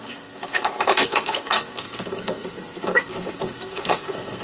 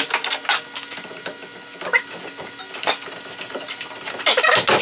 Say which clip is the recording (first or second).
second